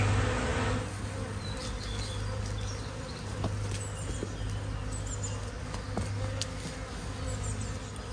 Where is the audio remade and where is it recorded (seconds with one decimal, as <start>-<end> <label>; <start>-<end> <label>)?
0.0-8.1 recorded